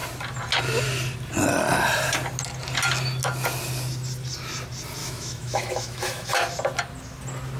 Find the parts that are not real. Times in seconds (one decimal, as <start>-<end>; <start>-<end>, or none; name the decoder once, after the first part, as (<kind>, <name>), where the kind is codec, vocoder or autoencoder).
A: 5.0-6.3 (autoencoder, DAC-VAE)